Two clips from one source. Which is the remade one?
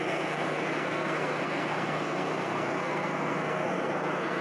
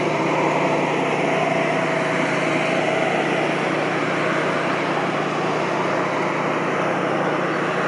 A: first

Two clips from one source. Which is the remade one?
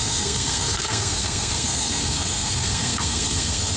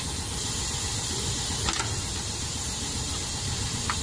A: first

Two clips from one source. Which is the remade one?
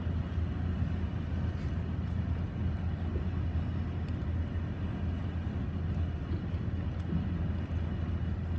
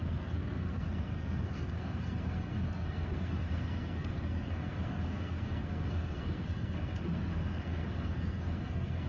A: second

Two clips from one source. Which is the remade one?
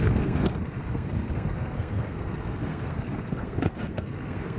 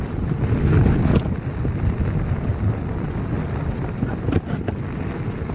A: first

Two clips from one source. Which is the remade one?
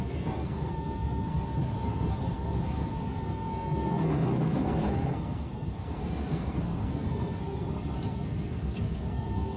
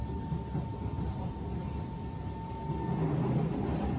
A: first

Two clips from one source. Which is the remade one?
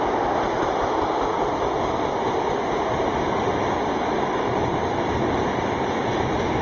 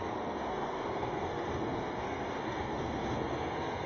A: second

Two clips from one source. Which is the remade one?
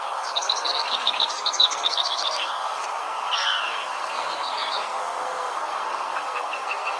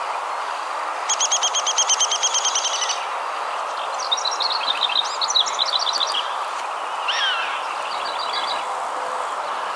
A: first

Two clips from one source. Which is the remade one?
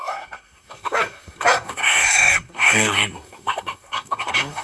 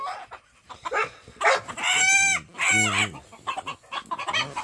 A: first